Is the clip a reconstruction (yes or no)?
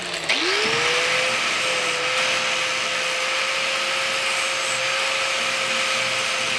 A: no